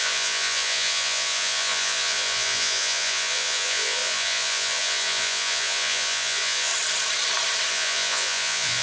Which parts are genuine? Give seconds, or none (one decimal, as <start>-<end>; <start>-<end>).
6.7-7.7